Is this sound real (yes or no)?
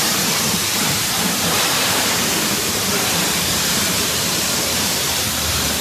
no